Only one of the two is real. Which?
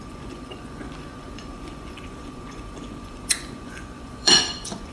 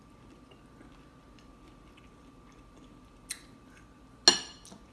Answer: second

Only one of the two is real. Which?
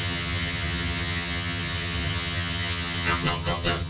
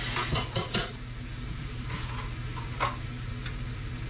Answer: second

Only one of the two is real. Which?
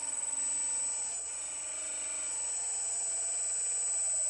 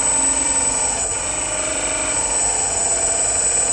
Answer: first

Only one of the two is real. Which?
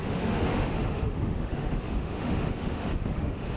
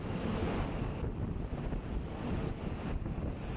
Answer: second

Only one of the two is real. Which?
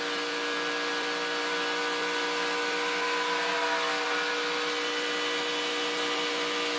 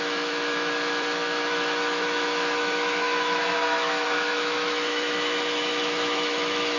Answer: first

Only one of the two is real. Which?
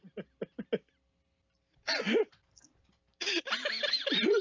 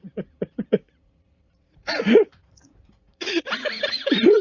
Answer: first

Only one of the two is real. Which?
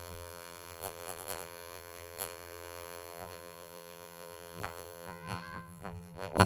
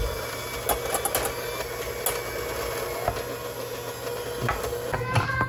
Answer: second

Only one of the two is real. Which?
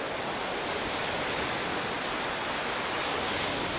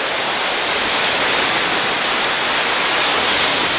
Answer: first